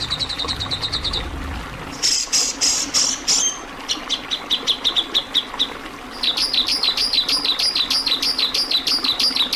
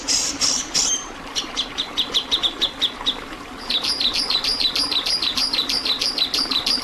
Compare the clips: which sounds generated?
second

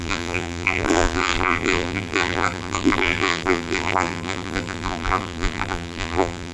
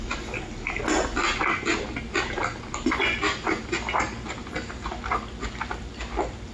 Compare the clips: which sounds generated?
first